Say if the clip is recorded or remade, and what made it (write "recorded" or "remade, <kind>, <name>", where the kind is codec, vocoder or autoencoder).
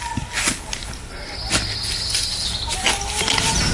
recorded